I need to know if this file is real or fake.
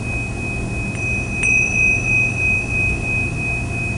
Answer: real